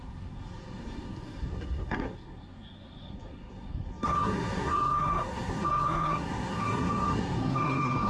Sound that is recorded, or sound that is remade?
remade